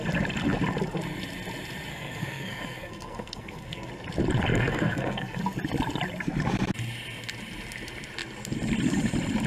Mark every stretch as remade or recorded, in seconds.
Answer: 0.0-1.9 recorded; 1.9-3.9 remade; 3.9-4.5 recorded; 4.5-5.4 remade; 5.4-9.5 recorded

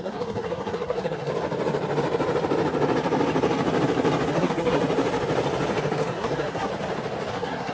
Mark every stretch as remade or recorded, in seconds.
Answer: 0.0-1.3 remade; 1.3-4.3 recorded; 4.3-4.8 remade; 4.8-5.9 recorded; 5.9-6.7 remade; 6.7-7.3 recorded; 7.3-7.7 remade

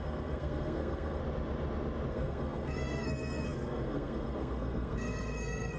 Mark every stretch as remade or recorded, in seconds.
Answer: 0.0-1.2 remade; 1.2-2.1 recorded; 2.1-5.8 remade

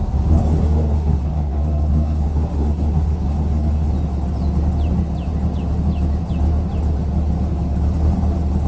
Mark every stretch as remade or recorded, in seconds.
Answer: 0.0-3.9 remade; 3.9-8.7 recorded

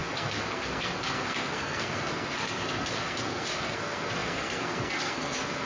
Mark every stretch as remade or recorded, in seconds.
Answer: 0.0-5.7 remade

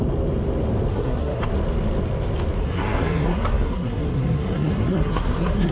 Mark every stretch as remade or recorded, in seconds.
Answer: 0.0-0.9 recorded; 0.9-1.4 remade; 1.4-2.6 recorded; 2.6-5.7 remade